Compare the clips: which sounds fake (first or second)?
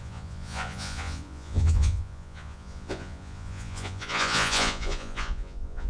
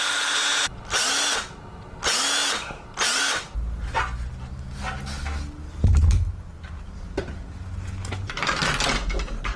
first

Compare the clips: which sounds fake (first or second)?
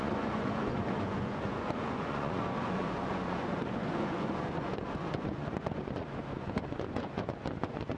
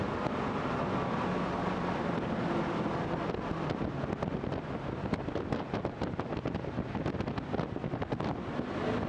first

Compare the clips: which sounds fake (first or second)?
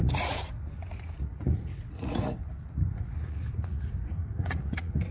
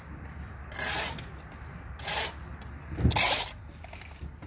first